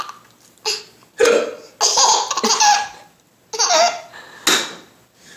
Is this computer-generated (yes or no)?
no